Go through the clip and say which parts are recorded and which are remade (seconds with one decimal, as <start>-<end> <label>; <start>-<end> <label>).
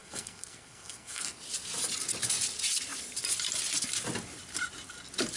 0.0-1.4 remade; 1.4-5.4 recorded